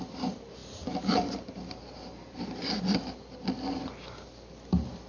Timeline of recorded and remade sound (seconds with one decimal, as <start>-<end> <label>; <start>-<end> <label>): 0.0-5.1 recorded